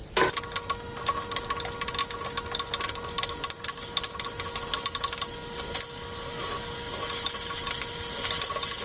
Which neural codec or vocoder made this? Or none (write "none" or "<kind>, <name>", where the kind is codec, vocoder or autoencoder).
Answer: none